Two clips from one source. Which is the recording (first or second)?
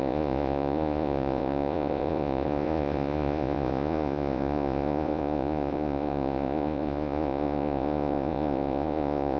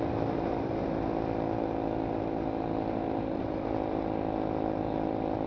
second